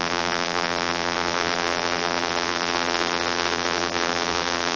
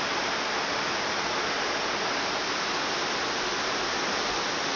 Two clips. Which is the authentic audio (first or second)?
second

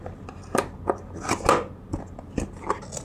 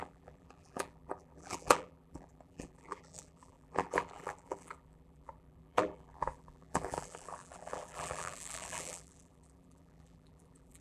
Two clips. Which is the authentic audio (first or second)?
first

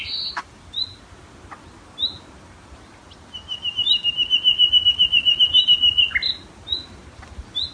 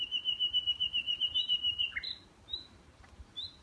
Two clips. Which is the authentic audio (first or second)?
first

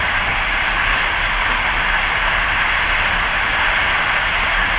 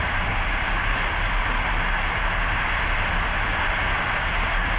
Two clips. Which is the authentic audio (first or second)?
second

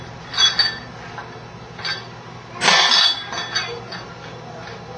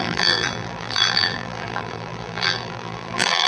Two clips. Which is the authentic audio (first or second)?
first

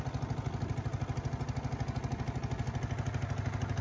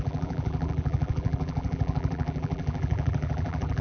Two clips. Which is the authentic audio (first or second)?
first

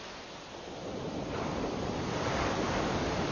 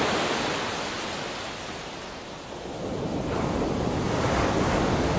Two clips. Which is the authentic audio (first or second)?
second